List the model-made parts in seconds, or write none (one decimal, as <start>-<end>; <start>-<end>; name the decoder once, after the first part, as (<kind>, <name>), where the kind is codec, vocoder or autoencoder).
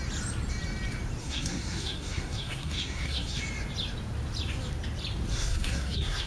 1.2-3.4 (codec, SNAC); 5.3-6.3